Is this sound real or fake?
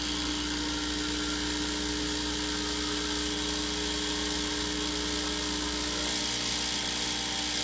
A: real